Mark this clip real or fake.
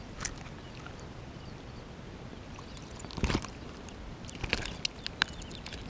real